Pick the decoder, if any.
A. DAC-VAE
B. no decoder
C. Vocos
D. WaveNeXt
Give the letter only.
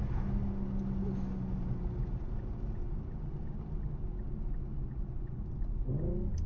B